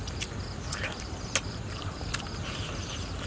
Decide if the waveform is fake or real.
real